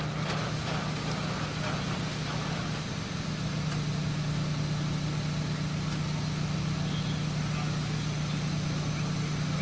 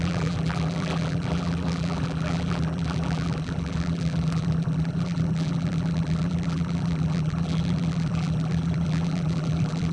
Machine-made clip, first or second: second